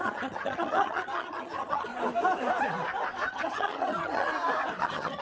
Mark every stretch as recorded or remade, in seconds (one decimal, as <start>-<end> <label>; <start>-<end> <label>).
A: 0.0-1.9 remade; 1.9-3.3 recorded; 3.3-4.3 remade; 4.3-4.8 recorded; 4.8-5.2 remade